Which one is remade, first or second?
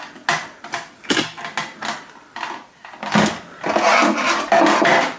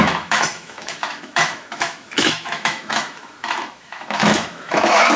second